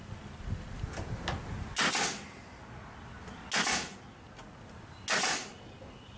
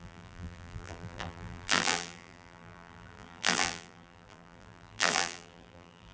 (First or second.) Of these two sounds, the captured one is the first